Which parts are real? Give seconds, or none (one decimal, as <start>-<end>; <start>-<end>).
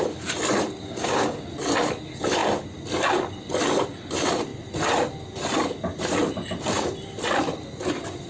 0.0-0.8; 1.4-8.3